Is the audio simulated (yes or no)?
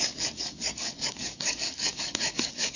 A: yes